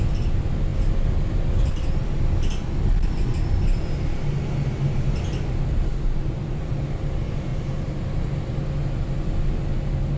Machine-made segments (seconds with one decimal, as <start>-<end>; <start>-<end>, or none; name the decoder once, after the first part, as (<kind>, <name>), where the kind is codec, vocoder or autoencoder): 5.9-6.6 (vocoder, BigVGAN v2); 7.5-8.0